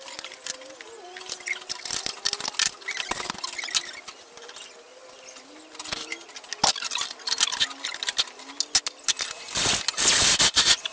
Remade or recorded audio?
recorded